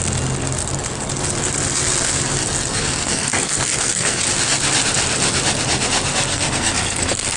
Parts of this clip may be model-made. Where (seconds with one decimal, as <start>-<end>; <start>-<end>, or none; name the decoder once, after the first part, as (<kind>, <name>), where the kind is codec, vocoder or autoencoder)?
2.7-4.2 (codec, SNAC); 6.3-7.4